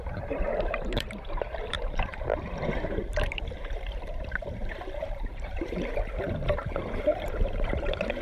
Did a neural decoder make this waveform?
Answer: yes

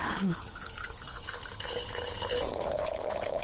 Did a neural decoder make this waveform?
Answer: yes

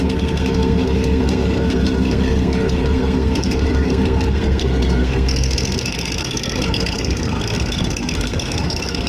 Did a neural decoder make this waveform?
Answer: yes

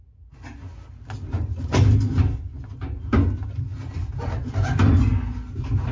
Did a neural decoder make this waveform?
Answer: no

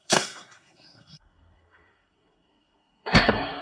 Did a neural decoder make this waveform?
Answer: yes